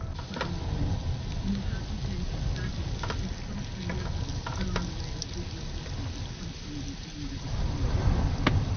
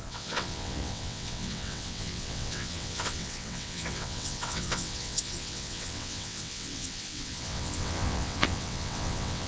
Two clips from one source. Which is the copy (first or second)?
second